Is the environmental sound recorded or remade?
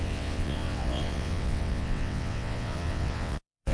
remade